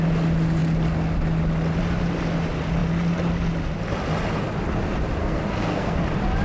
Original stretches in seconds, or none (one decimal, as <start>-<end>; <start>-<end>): 0.0-5.2; 6.0-6.4